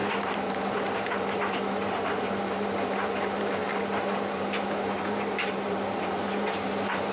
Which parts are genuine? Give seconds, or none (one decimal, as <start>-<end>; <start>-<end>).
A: 3.6-4.3